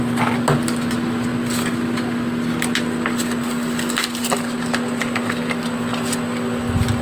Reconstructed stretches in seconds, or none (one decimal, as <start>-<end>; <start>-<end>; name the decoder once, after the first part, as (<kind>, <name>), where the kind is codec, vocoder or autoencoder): none